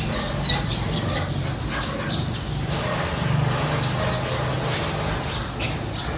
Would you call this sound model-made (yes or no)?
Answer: no